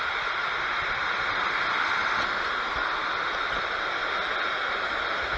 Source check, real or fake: real